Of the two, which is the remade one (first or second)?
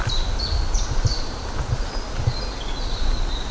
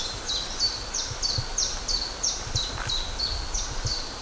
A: first